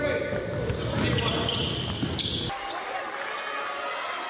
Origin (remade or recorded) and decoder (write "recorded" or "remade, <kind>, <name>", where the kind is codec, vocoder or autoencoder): recorded